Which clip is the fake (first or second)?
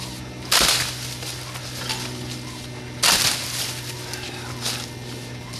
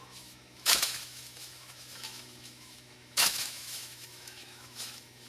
second